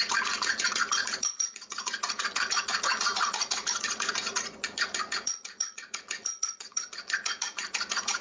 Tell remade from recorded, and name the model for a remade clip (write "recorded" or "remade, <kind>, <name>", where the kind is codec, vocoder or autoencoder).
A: remade, vocoder, Vocos